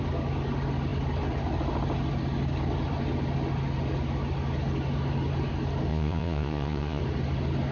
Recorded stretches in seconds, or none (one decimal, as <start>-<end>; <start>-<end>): 0.0-5.9; 7.0-7.7